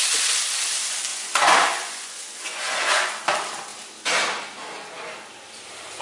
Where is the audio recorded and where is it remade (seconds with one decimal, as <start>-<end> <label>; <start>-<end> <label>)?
0.0-1.1 recorded; 1.1-3.2 remade; 3.2-6.0 recorded